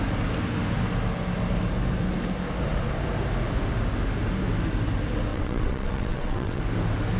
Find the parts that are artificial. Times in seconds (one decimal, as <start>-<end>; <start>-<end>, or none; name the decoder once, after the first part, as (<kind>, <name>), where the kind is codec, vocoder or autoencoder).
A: 5.3-6.6 (vocoder, WaveNeXt)